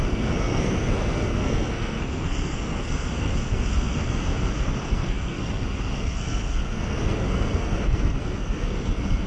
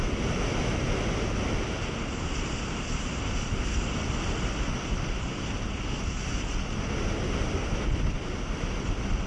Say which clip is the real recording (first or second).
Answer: second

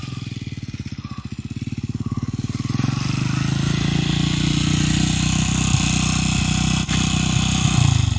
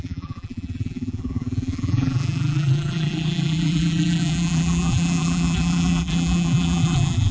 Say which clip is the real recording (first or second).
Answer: first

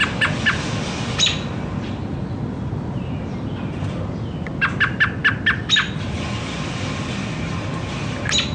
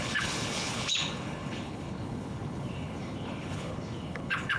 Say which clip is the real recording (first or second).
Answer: first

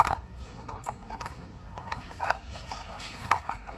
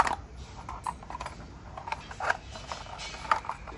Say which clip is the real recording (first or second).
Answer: second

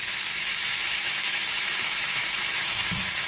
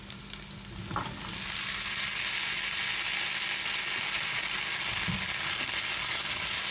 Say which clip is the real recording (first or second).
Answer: second